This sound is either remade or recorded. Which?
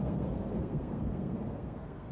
remade